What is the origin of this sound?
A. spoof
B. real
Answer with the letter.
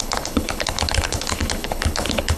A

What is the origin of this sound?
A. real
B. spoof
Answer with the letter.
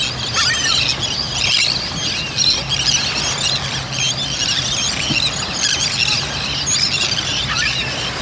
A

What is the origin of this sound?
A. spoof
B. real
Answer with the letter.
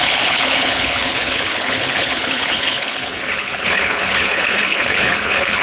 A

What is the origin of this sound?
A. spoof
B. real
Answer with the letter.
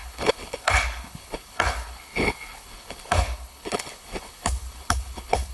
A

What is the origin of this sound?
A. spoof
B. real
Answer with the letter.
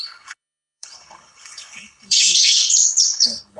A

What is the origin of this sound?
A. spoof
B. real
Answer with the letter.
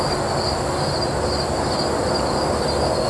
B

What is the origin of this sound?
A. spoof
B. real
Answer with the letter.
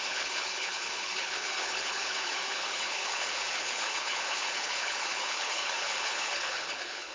A